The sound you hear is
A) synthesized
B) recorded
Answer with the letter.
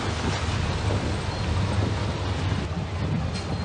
B